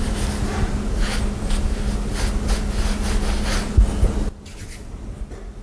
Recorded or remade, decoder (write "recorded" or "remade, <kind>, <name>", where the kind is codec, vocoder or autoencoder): recorded